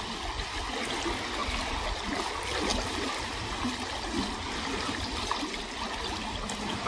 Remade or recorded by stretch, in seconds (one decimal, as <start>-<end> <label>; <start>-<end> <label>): 0.0-6.9 recorded